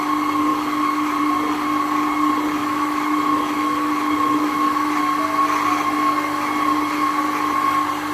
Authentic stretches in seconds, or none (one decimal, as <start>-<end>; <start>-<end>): 0.0-0.5; 1.2-2.6; 5.0-8.1

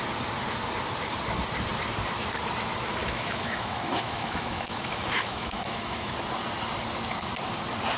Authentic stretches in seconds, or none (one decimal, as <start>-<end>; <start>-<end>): 0.0-3.0; 6.1-8.0